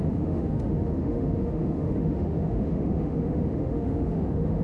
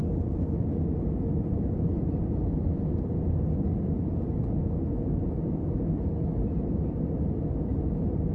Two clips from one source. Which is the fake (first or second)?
first